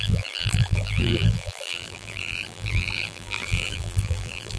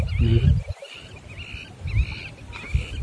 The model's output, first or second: first